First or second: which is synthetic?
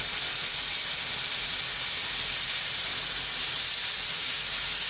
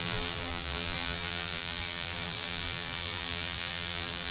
second